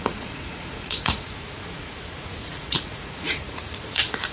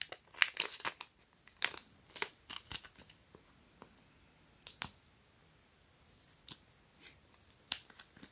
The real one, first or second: second